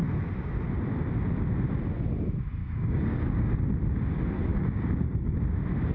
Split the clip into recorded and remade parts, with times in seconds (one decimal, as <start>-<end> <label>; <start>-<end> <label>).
0.0-2.6 recorded; 2.6-3.7 remade; 3.7-4.5 recorded; 4.5-5.4 remade; 5.4-5.9 recorded

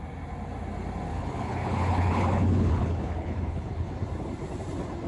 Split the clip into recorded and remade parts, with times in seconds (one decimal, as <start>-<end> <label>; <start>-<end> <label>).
0.0-1.1 recorded; 1.1-3.9 remade; 3.9-5.1 recorded

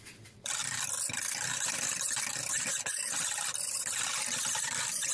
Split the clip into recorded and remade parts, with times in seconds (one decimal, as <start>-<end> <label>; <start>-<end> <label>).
0.0-5.1 recorded

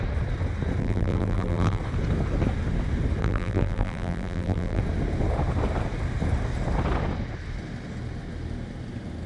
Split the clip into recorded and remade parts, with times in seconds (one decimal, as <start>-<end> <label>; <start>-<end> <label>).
0.0-0.8 recorded; 0.8-1.8 remade; 1.8-3.2 recorded; 3.2-4.8 remade; 4.8-9.3 recorded

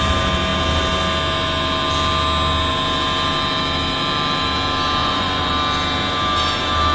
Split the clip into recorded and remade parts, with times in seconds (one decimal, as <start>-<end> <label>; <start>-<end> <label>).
0.0-5.0 recorded; 5.0-5.5 remade; 5.5-6.9 recorded

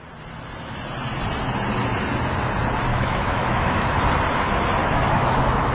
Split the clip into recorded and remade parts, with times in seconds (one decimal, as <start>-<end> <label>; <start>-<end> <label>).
0.0-2.9 recorded; 2.9-4.0 remade; 4.0-4.8 recorded; 4.8-5.7 remade

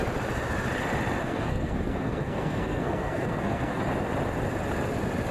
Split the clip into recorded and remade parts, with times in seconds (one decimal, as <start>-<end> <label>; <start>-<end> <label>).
0.0-1.2 recorded; 1.2-3.8 remade; 3.8-5.3 recorded